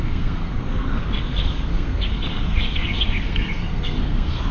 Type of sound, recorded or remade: remade